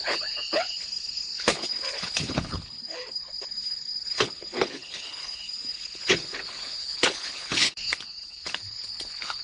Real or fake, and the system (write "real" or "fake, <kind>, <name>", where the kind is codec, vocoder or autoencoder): fake, codec, HILCodec